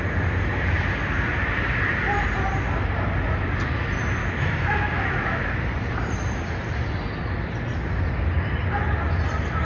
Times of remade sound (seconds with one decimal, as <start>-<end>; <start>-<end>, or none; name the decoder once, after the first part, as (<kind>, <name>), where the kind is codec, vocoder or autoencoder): 4.2-5.4 (autoencoder, DAC-VAE)

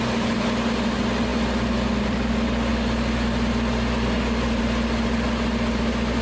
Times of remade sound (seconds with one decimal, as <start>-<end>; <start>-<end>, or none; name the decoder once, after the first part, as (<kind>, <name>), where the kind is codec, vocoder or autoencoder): 1.3-2.3 (vocoder, BigVGAN v2)

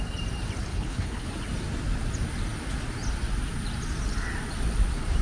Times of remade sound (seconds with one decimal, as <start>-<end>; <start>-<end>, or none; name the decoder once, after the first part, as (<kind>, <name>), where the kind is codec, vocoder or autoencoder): 0.7-1.3 (codec, HILCodec)